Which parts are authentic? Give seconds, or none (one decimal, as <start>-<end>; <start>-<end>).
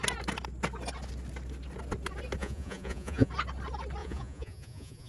0.0-2.4; 3.3-4.0